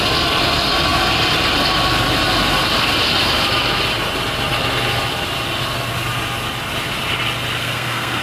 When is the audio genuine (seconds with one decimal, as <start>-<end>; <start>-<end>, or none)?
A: 0.0-7.6